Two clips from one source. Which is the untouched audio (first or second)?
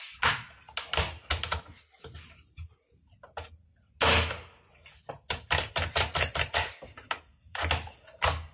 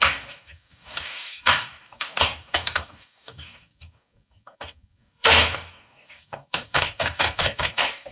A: first